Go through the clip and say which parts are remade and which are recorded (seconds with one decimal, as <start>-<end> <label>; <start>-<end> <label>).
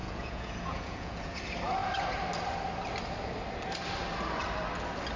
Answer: 0.0-1.4 remade; 1.4-5.2 recorded